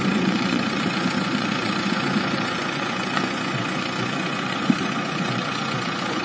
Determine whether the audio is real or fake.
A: fake